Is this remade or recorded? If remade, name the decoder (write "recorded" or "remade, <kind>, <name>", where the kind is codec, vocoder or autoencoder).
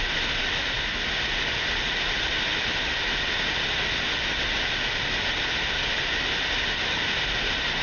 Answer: recorded